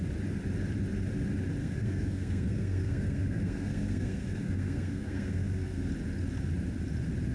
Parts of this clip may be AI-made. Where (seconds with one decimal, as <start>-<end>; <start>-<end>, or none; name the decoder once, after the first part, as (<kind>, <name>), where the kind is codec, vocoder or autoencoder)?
1.6-5.9 (codec, SNAC)